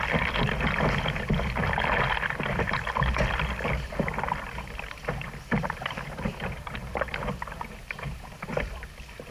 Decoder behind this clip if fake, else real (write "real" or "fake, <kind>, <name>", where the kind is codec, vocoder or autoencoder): real